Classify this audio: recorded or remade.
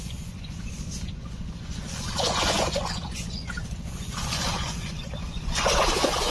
remade